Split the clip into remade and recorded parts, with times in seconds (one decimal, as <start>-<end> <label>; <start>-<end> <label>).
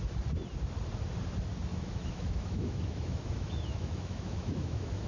0.0-1.7 recorded; 1.7-5.1 remade